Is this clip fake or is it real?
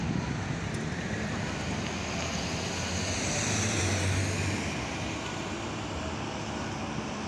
real